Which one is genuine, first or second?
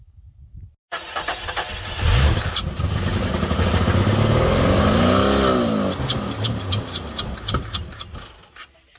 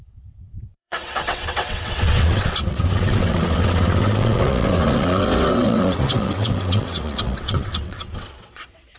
first